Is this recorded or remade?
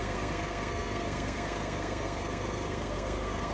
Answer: remade